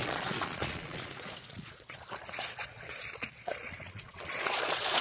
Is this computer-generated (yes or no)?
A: yes